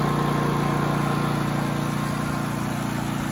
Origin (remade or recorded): recorded